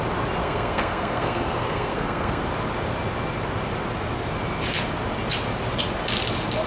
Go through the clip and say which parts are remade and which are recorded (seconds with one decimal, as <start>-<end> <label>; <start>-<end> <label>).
0.0-0.4 recorded; 0.4-2.4 remade; 2.4-6.7 recorded